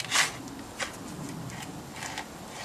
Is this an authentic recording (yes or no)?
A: yes